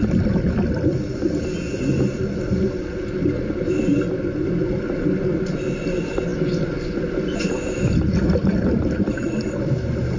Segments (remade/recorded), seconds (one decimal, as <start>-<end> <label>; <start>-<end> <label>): 0.0-10.2 recorded